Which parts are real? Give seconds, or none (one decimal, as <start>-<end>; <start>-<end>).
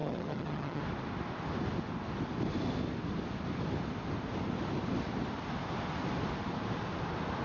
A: 0.8-7.4